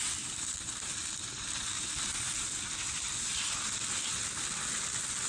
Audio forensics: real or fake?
real